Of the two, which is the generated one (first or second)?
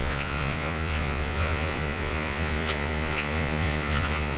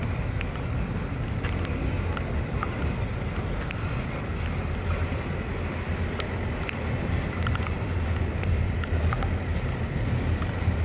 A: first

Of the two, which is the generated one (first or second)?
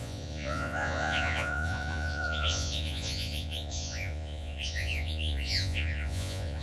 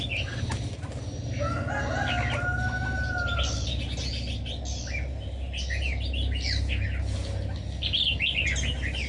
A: first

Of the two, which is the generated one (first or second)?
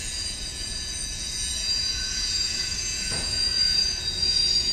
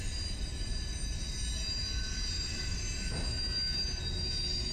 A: first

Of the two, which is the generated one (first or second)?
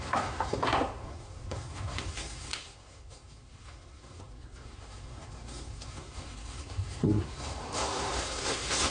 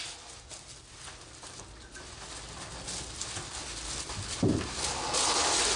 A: first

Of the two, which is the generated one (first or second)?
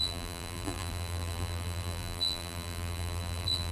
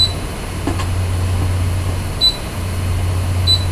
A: first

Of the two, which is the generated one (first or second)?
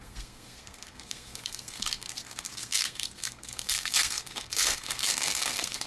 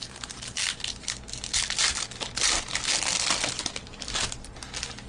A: first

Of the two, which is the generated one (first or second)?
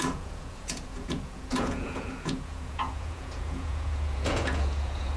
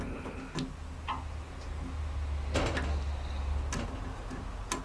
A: first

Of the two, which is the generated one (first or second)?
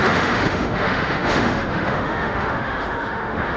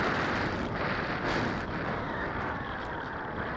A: first